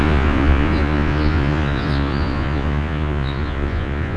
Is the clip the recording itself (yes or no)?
no